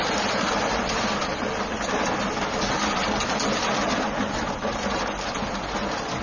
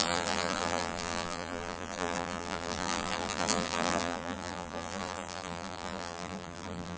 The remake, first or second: second